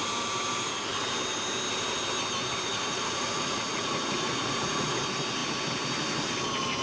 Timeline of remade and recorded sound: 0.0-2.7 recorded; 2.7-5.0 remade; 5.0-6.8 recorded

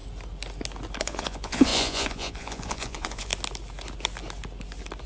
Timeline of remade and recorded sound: 0.0-1.0 recorded; 1.0-3.3 remade; 3.3-5.1 recorded

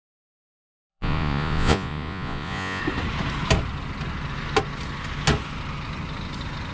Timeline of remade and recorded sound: 0.0-0.9 recorded; 0.9-2.8 remade; 2.8-6.7 recorded

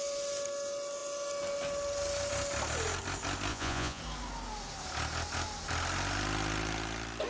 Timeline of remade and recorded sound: 0.0-3.5 recorded; 3.5-4.0 remade; 4.0-7.3 recorded

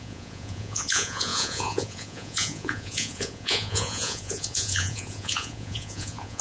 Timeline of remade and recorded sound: 0.0-6.4 remade

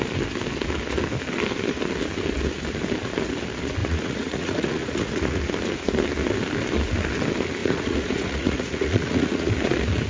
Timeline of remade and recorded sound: 0.0-3.8 recorded; 3.8-5.4 remade; 5.4-7.6 recorded; 7.6-9.5 remade; 9.5-10.1 recorded

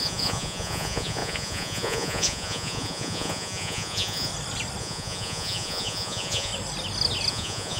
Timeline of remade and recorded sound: 0.0-4.3 remade; 4.3-4.8 recorded; 4.8-6.5 remade; 6.5-7.3 recorded; 7.3-7.8 remade

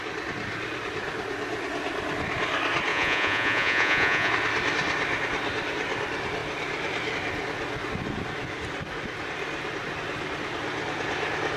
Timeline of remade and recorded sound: 0.0-2.9 recorded; 2.9-4.3 remade; 4.3-11.6 recorded